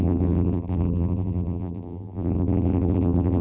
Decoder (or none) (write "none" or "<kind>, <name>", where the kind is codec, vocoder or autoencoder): vocoder, BigVGAN v2